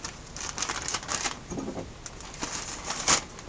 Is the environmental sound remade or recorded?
recorded